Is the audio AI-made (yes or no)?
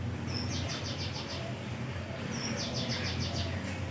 no